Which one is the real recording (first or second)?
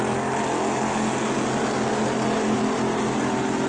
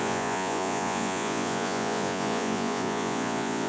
first